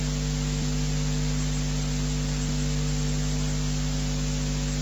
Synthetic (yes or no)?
no